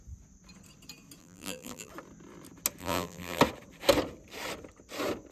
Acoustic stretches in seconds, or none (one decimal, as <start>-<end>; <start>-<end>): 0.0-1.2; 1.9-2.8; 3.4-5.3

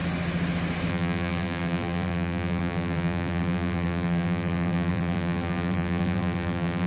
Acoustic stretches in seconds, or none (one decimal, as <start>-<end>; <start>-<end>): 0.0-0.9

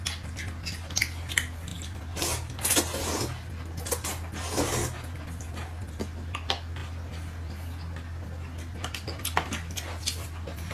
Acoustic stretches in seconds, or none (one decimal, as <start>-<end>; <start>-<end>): 0.0-10.7

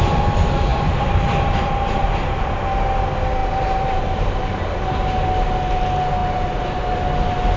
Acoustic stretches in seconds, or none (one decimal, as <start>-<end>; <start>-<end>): 0.0-0.7; 2.6-3.4; 4.0-7.6

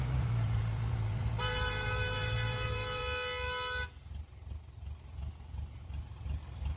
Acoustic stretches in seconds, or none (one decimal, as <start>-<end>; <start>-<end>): 3.0-6.8